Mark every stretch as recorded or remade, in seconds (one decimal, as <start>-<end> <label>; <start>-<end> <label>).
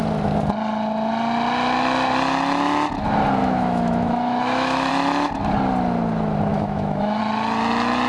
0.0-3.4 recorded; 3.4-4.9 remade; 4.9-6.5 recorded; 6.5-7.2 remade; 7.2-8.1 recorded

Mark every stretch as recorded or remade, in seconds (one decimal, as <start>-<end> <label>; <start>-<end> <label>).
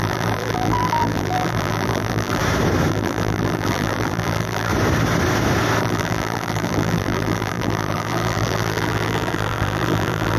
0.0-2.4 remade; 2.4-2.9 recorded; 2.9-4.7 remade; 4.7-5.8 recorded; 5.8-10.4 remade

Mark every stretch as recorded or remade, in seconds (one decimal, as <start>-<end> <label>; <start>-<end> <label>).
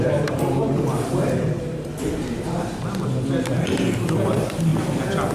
0.0-1.9 remade; 1.9-4.3 recorded; 4.3-4.7 remade; 4.7-5.3 recorded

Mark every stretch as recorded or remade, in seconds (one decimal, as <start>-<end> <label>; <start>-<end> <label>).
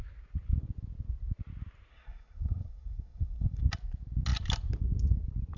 0.0-1.9 recorded; 1.9-3.6 remade; 3.6-5.6 recorded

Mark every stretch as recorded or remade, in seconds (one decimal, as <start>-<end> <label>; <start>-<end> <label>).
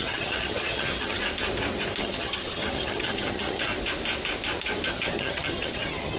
0.0-1.2 remade; 1.2-2.0 recorded; 2.0-3.7 remade; 3.7-4.9 recorded; 4.9-6.2 remade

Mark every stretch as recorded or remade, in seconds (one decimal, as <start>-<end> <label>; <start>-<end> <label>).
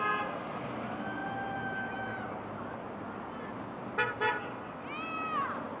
0.0-5.8 recorded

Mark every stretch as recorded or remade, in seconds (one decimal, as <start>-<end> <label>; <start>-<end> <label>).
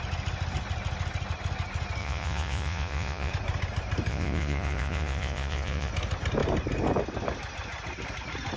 0.0-2.0 recorded; 2.0-3.3 remade; 3.3-4.1 recorded; 4.1-5.9 remade; 5.9-8.6 recorded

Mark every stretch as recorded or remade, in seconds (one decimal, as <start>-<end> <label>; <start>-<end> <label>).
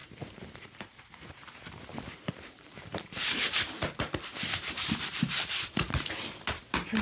0.0-4.3 remade; 4.3-4.8 recorded; 4.8-7.0 remade